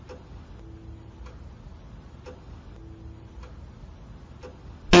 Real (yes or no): yes